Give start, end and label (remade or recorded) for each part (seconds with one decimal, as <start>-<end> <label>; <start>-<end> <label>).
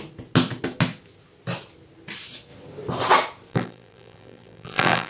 0.0-3.5 recorded; 3.5-5.1 remade